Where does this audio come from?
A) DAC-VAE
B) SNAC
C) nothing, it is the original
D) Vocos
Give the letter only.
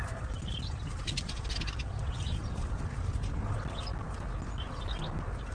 C